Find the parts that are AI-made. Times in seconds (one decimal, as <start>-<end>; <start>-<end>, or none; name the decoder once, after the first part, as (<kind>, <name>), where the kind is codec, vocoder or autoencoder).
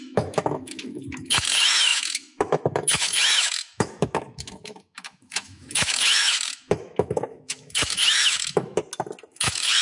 0.0-8.8 (autoencoder, DAC-VAE); 9.3-9.8